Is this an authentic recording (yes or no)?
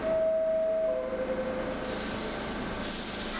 yes